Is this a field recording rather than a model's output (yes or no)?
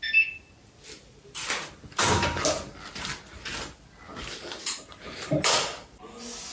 yes